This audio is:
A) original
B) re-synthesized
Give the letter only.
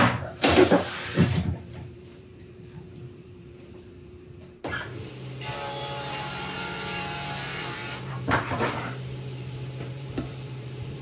B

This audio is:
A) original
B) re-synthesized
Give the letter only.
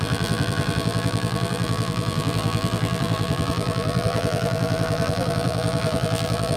B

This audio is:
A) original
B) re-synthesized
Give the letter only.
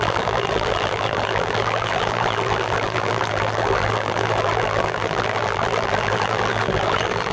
B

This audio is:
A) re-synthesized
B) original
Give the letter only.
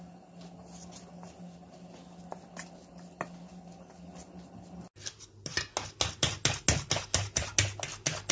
B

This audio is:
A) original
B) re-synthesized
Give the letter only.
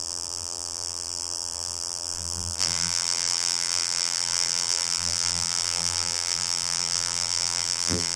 B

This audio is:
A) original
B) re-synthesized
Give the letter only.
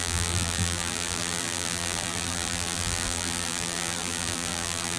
B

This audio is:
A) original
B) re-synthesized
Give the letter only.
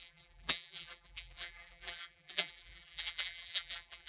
B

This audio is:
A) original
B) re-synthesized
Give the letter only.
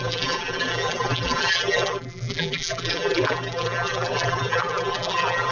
B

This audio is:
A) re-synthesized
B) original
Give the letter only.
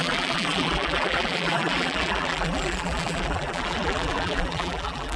A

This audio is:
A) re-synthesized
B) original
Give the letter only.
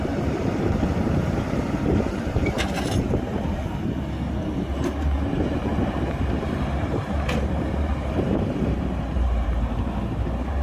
A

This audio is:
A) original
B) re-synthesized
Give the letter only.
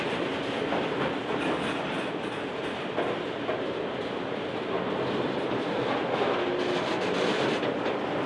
A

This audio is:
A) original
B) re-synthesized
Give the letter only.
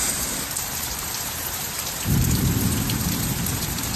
B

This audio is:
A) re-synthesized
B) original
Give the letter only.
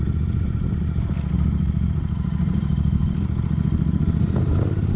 B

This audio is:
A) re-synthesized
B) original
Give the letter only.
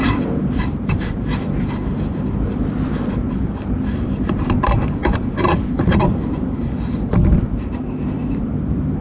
A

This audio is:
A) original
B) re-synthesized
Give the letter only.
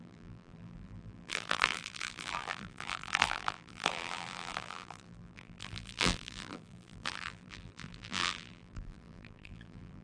B